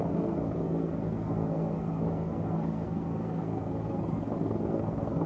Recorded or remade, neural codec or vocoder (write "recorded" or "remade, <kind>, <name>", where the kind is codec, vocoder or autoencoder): remade, codec, SNAC